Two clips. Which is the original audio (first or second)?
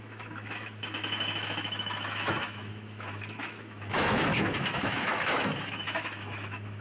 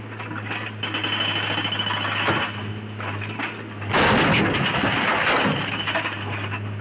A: second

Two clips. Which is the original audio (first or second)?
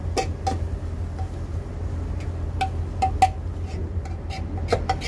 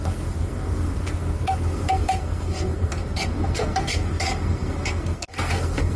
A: first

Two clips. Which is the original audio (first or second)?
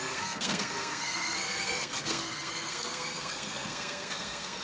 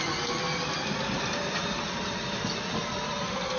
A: second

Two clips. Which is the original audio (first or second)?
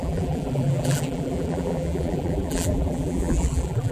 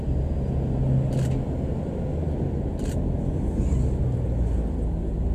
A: second